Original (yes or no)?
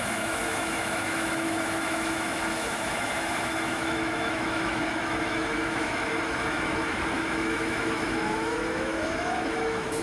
no